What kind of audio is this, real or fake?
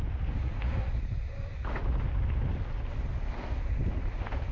real